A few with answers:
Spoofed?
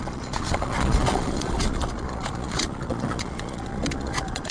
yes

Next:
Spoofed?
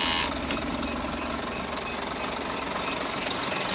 no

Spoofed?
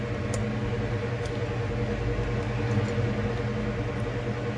no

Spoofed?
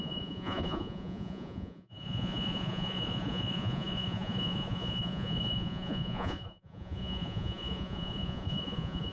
yes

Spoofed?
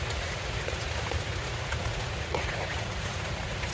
yes